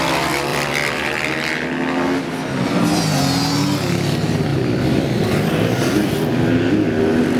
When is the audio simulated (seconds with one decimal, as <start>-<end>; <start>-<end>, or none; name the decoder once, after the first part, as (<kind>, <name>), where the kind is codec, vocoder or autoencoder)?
0.5-1.3 (vocoder, BigVGAN v2); 4.5-6.7